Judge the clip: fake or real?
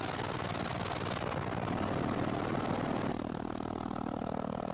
real